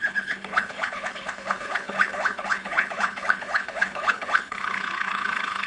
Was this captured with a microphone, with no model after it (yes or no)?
no